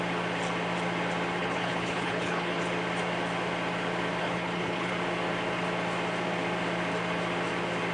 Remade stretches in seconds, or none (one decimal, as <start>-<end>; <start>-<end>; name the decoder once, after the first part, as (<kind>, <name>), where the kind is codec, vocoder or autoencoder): 1.4-2.6 (codec, HILCodec); 4.2-4.9